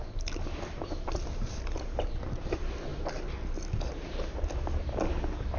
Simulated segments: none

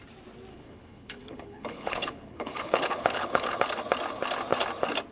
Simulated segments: 0.5-3.6 (codec, HILCodec)

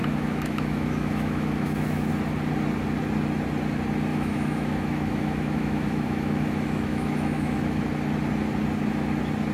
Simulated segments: 0.0-2.1 (autoencoder, DAC-VAE); 4.1-7.8